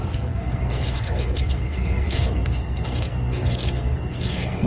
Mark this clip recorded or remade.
remade